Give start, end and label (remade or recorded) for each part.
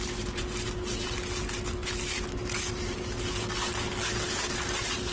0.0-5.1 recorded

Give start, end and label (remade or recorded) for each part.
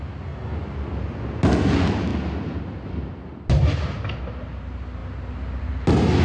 0.0-6.2 recorded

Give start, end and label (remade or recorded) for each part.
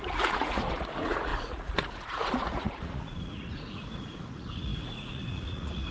0.0-5.9 remade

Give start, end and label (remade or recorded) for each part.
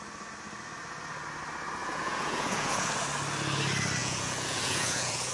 0.0-1.8 recorded; 1.8-2.9 remade; 2.9-4.0 recorded; 4.0-5.3 remade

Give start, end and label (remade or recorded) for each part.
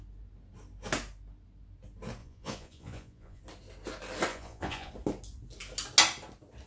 0.0-2.2 recorded; 2.2-3.4 remade; 3.4-4.3 recorded; 4.3-4.9 remade; 4.9-6.7 recorded